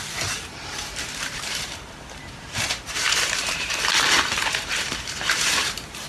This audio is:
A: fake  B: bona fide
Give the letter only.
A